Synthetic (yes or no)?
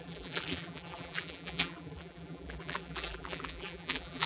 yes